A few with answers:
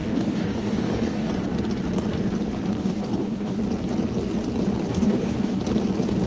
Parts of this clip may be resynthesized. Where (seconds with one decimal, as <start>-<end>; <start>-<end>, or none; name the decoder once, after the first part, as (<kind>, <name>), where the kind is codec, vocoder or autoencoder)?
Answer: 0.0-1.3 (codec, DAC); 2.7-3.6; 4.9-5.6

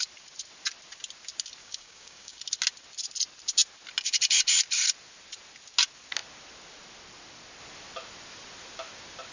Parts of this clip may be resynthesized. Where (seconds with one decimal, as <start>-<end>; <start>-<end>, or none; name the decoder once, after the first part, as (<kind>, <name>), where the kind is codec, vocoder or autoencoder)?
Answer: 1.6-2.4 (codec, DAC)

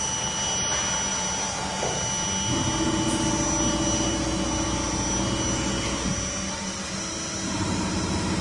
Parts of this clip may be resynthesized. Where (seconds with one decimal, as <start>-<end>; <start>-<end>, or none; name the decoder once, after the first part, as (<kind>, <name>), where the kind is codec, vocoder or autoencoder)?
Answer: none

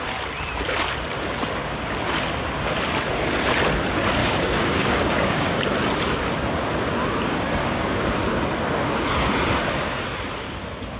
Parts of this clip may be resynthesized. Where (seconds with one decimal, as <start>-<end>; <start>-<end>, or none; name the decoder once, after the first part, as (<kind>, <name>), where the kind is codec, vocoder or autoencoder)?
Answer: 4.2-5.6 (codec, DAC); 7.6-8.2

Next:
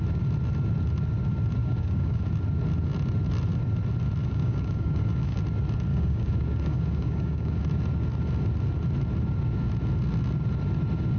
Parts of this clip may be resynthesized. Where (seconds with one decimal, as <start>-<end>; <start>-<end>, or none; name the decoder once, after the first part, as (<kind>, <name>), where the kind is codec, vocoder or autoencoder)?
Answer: 1.6-2.2 (codec, DAC); 4.2-5.4; 5.9-7.6

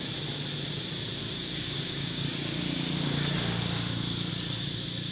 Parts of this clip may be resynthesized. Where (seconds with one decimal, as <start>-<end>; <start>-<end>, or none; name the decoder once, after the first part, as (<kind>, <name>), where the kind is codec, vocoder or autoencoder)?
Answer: 1.2-4.3 (codec, DAC)

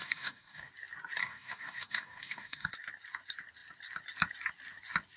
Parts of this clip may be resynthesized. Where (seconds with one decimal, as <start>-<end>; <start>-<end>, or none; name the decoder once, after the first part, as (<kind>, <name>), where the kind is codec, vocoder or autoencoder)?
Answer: 0.0-0.7 (codec, DAC); 1.2-2.7

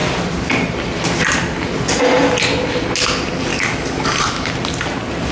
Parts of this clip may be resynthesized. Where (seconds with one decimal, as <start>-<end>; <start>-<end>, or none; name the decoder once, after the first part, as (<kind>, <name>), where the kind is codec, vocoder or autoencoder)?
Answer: 3.5-4.5 (codec, DAC)